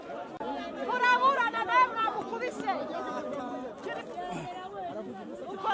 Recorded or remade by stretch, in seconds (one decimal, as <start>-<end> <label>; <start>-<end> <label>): 0.0-5.7 recorded